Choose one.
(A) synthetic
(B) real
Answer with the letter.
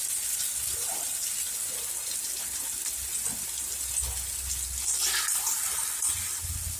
B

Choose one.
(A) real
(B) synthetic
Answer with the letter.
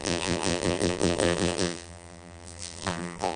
B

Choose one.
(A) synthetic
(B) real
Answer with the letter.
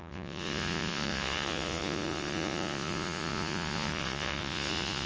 A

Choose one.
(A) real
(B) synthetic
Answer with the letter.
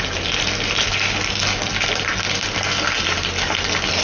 A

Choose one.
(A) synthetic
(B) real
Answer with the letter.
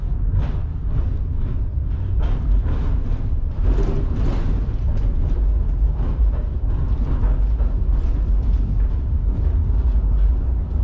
B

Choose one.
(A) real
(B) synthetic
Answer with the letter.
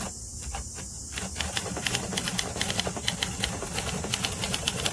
A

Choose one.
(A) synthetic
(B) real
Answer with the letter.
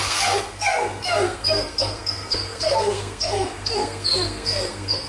A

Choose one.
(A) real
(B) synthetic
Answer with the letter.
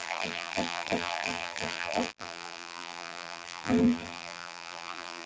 B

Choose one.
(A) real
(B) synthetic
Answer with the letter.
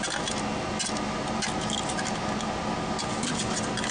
A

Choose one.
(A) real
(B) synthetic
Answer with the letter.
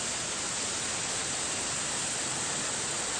A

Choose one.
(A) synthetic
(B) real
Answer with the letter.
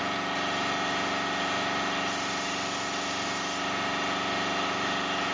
B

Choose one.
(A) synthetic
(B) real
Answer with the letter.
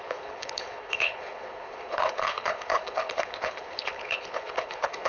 A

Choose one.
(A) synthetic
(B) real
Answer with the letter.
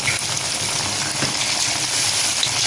B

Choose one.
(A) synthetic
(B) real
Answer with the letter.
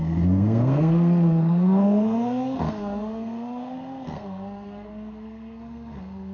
A